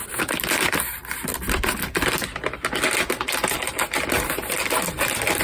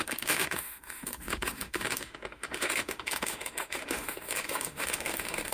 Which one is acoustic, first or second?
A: first